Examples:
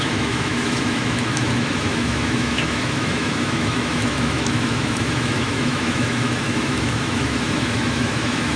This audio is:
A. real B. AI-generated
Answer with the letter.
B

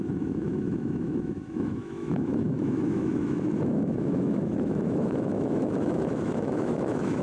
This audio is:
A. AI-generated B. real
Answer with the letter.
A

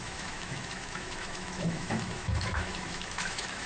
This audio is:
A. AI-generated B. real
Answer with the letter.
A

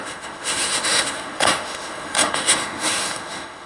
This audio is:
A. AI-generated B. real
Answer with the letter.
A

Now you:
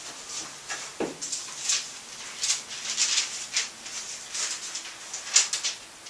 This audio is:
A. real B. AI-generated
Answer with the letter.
A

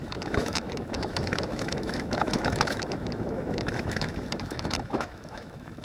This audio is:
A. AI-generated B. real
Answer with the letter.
A